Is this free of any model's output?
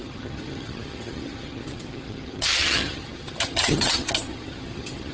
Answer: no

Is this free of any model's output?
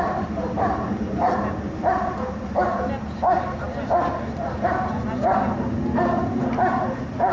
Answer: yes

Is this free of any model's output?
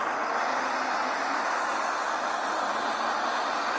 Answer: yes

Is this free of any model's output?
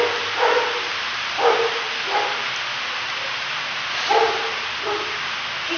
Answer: yes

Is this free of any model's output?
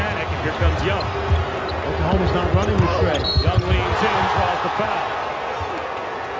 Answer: yes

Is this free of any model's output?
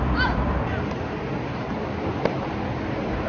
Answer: yes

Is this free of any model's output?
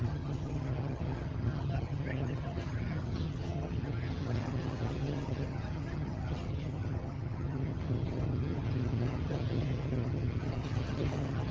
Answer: no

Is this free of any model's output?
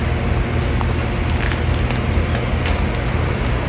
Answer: yes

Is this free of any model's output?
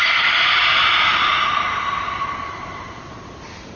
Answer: yes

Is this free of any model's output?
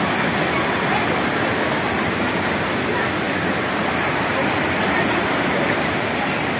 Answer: yes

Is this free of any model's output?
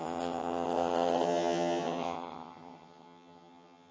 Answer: no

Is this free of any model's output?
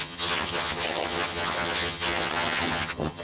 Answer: no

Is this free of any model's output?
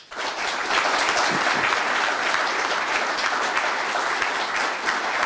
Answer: yes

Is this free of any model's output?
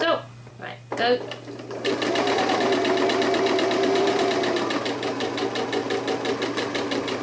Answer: yes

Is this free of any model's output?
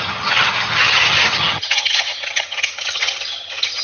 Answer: no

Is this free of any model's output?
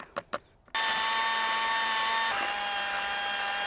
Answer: yes